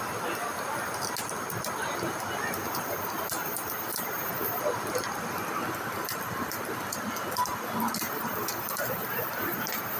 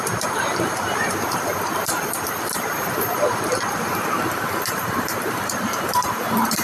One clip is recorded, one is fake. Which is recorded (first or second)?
first